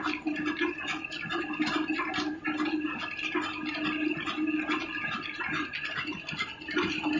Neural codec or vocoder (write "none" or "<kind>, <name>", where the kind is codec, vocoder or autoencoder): none